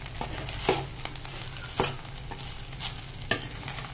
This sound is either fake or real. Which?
real